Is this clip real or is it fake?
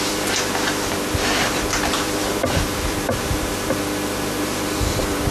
fake